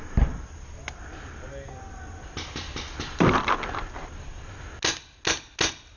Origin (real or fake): real